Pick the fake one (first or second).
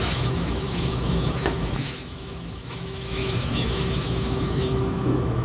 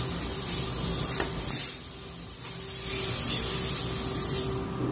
first